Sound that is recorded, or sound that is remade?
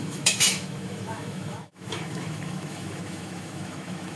remade